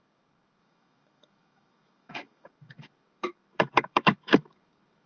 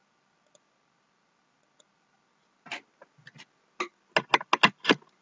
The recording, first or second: second